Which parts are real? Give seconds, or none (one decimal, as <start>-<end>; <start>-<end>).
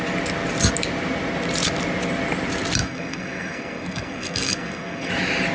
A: 0.0-2.8; 5.1-5.5